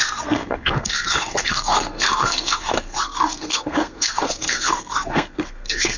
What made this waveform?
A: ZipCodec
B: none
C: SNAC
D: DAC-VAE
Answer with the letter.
C